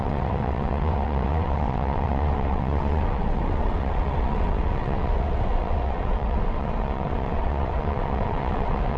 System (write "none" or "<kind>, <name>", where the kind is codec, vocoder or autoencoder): vocoder, WaveNeXt